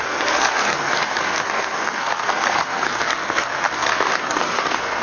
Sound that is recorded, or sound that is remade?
remade